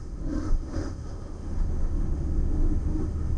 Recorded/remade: remade